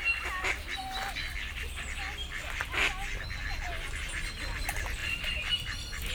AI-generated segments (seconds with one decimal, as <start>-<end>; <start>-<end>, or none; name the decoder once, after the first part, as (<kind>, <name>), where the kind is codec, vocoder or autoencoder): 5.0-6.1 (vocoder, BigVGAN v2)